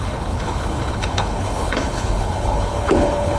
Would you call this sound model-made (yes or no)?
yes